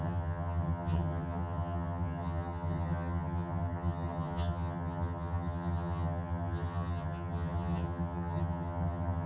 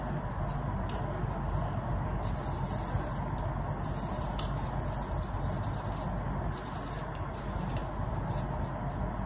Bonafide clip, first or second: second